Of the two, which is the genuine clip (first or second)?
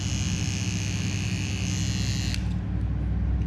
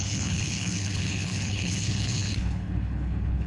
first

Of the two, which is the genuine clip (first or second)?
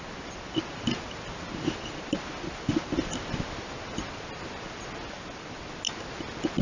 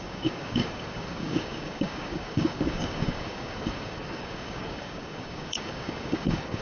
first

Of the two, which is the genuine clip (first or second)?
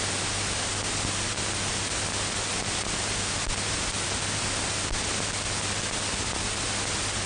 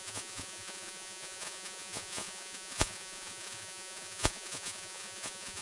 first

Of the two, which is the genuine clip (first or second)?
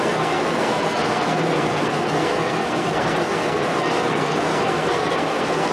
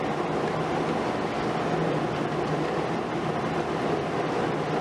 second